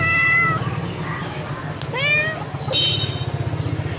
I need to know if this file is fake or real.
real